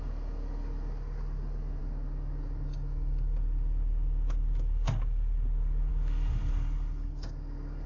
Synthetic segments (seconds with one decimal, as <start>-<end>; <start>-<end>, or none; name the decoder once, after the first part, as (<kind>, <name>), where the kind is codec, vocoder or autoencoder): none